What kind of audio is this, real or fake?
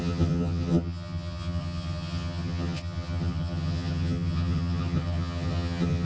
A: fake